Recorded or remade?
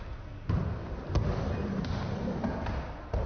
recorded